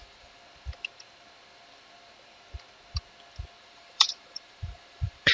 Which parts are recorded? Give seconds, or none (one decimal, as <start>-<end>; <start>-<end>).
0.4-3.6